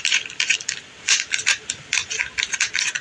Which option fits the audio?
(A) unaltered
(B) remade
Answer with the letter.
B